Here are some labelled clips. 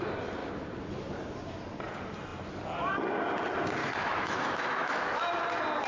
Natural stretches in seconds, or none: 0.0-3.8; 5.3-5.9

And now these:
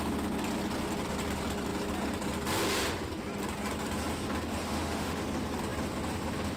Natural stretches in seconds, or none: 0.0-4.6; 5.2-6.6

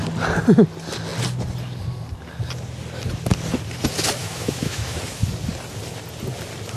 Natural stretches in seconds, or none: 0.0-4.2; 5.0-6.8

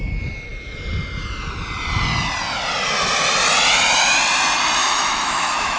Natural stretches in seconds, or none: 0.0-4.8

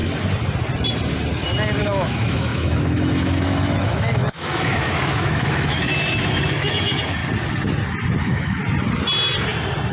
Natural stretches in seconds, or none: 0.0-1.8; 7.2-8.2; 8.6-9.9

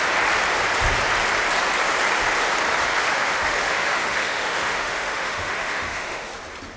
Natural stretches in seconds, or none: 0.0-3.0; 6.3-6.8

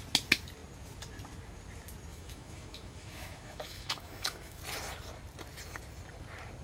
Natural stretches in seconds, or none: 0.0-2.1; 4.6-6.6